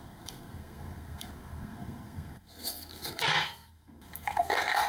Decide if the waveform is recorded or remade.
remade